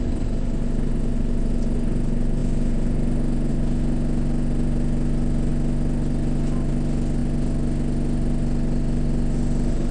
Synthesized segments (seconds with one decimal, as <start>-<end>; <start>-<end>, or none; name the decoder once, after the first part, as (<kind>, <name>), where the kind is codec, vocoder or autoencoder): none